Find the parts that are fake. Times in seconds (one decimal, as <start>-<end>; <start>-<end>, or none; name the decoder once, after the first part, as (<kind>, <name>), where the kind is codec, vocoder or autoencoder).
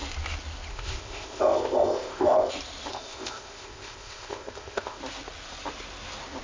0.7-2.5 (codec, ZipCodec); 2.9-5.0